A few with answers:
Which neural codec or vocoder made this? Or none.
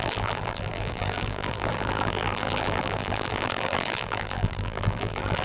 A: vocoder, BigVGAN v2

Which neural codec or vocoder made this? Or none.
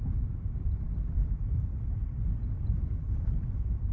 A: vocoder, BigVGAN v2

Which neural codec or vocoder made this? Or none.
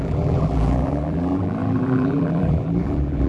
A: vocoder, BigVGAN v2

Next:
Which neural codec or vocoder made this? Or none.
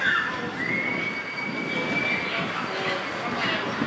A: none